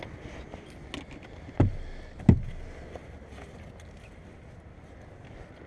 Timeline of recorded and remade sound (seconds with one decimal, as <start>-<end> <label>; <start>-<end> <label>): 0.0-5.7 recorded